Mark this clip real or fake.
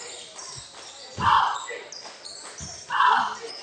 real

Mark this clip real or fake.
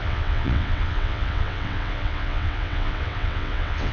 fake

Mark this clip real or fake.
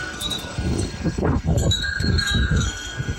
fake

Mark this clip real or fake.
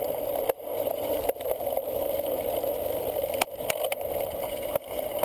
real